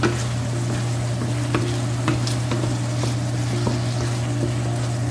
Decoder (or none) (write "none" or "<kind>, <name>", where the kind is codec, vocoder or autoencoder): none